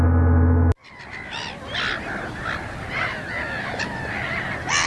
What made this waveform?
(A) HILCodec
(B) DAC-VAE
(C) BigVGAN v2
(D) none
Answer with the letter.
D